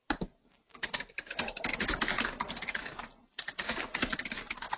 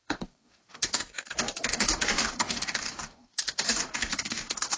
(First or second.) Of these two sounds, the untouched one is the first